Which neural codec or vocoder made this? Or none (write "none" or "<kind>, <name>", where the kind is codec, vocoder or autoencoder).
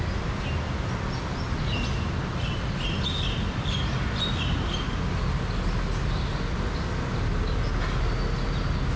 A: none